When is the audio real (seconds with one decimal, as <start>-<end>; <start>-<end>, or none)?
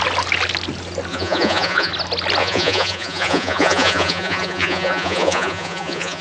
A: 0.0-1.1; 1.9-2.4